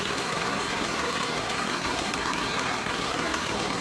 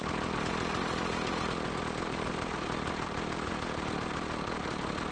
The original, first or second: second